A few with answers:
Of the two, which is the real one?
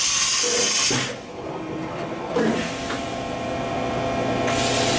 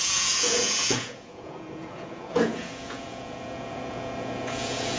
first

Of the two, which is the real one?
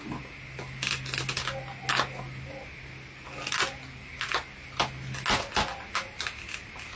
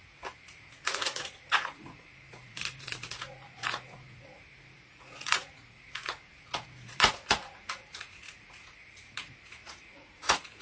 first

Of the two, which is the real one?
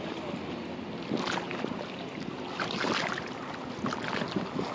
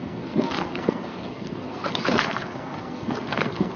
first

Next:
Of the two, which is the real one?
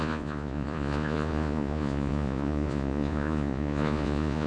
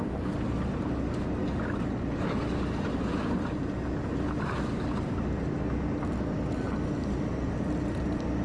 second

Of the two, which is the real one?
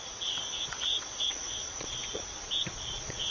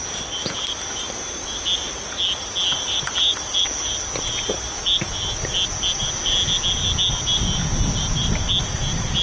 second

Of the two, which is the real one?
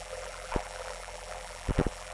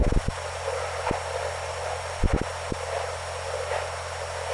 second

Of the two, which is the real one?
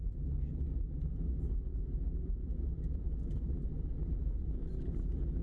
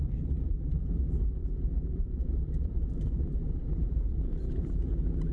first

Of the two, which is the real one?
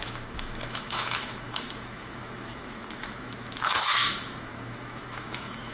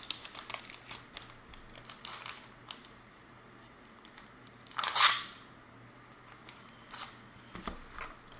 second